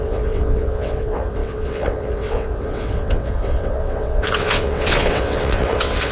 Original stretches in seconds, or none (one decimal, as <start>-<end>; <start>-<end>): none